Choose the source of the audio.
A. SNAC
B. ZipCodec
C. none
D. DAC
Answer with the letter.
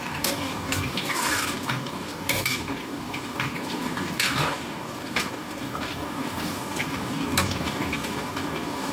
D